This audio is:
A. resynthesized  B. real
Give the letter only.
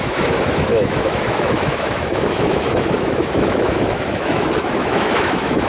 A